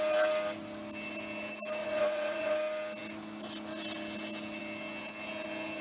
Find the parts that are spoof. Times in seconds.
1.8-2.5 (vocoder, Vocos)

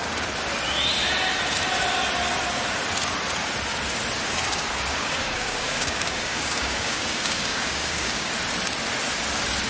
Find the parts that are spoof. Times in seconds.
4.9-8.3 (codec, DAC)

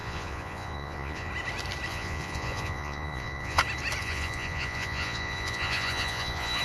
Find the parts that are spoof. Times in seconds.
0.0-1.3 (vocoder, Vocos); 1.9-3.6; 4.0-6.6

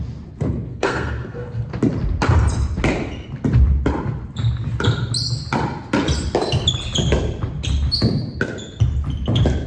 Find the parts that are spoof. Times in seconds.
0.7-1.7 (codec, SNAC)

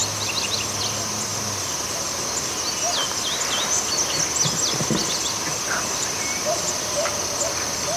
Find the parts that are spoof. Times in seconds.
1.3-2.5 (vocoder, BigVGAN v2); 3.0-4.0; 5.0-6.8

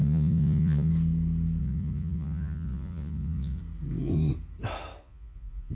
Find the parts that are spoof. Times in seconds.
0.0-0.9 (vocoder, Vocos); 1.6-3.6; 5.0-5.7

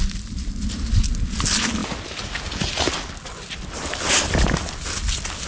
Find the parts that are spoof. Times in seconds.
none

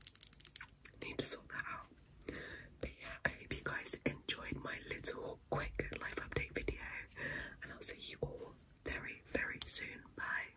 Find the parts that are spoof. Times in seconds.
2.8-3.4 (codec, SNAC)